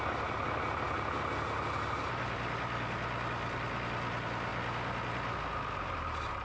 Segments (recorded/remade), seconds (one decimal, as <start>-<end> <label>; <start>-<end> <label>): 0.0-6.4 recorded